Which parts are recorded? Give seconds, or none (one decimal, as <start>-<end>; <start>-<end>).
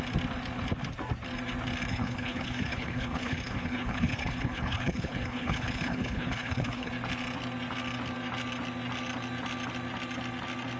0.0-1.9; 6.9-10.8